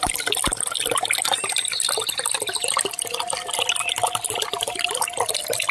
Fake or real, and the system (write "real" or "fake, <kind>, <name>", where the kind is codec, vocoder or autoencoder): real